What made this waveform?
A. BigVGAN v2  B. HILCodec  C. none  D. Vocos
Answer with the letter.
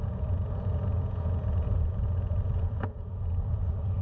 D